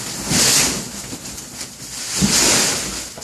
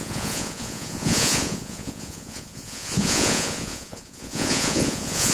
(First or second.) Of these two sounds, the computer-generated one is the second